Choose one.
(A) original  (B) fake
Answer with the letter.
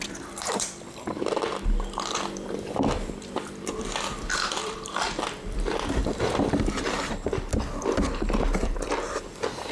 B